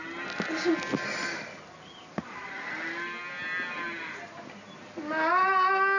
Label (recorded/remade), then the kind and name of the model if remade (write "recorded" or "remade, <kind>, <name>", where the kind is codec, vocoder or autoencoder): recorded